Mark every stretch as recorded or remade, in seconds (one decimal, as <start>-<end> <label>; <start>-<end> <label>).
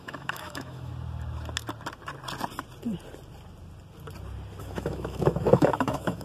0.0-0.9 remade; 0.9-4.6 recorded; 4.6-6.2 remade